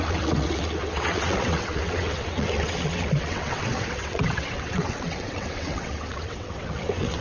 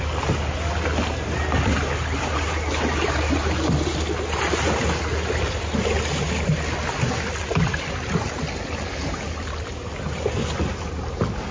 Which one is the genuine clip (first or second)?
second